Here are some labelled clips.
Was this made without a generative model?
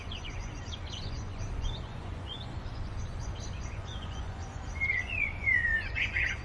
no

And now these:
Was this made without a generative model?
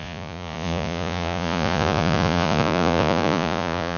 no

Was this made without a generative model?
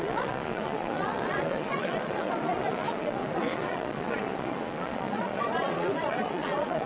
no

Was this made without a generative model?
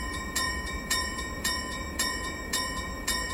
no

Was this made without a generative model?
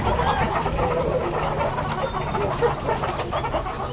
yes